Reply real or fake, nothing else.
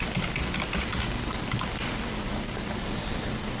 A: real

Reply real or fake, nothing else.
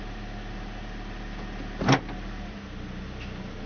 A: real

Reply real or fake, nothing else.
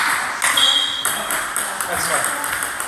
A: real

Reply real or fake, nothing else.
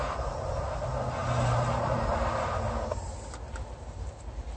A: real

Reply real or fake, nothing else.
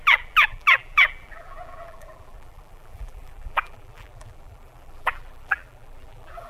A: fake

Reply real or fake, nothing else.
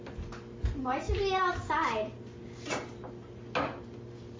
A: real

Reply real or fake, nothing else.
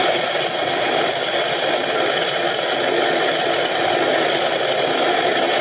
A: real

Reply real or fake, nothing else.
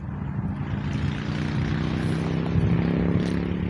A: real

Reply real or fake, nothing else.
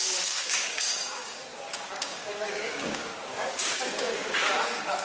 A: fake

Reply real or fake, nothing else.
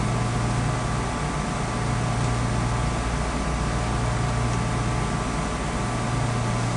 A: real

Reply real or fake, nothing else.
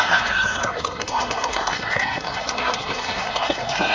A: fake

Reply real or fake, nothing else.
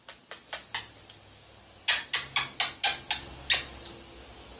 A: real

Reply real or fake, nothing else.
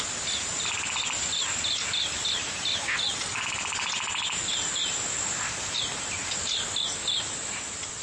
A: real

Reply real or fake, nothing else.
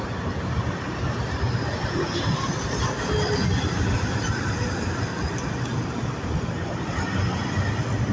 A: fake